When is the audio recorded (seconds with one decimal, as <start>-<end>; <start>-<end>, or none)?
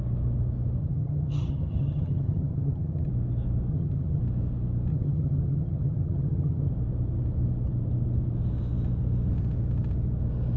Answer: 0.0-0.8; 3.1-3.7; 4.2-4.9; 6.7-10.6